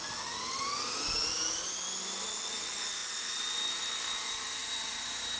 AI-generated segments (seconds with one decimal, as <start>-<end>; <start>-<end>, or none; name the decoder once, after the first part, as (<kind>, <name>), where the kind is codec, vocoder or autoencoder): none

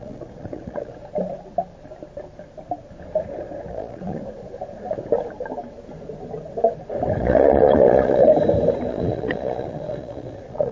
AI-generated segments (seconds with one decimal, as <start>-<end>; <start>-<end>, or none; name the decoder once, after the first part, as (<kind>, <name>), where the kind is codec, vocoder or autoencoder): 0.0-1.0 (vocoder, Vocos); 3.7-4.2; 7.2-8.3; 8.9-10.7

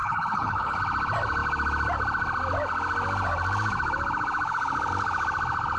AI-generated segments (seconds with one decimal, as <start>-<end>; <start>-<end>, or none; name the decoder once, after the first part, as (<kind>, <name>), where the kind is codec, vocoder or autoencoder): 0.0-0.8 (codec, HILCodec)

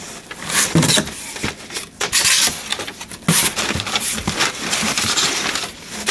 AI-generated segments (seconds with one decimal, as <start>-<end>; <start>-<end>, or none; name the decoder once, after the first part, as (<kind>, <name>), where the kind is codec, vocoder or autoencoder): 0.0-6.1 (vocoder, BigVGAN v2)

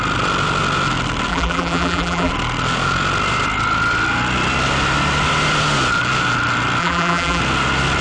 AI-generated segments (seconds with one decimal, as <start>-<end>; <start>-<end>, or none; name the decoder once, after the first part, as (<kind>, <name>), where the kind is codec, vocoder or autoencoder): 1.3-2.3 (vocoder, BigVGAN v2); 6.8-7.4

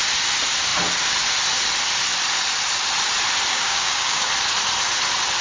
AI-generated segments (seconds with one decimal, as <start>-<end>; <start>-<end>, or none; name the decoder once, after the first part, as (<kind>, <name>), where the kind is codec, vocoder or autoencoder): 3.5-4.3 (codec, DAC)

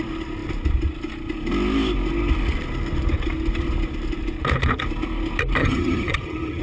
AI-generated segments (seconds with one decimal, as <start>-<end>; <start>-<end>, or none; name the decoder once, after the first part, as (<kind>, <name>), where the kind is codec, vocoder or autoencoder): 5.6-6.6 (vocoder, HiFi-GAN)

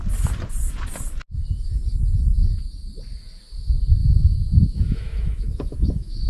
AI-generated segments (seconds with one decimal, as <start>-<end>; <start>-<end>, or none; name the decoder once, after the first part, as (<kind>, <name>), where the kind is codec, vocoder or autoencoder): 4.0-6.3 (autoencoder, DAC-VAE)